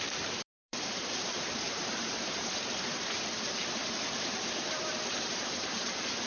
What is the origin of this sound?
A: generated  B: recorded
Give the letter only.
A